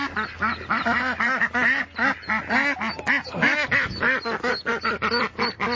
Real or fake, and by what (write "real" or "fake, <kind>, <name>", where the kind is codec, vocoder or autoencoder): real